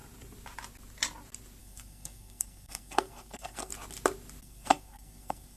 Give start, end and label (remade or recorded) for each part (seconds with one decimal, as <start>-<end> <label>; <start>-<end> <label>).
0.0-1.6 recorded; 1.6-3.7 remade; 3.7-4.4 recorded; 4.4-5.6 remade